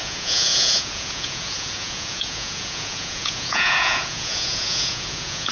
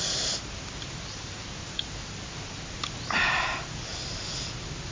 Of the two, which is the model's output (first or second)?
first